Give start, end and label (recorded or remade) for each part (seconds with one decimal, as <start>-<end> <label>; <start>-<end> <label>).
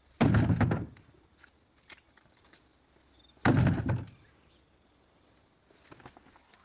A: 0.0-6.6 recorded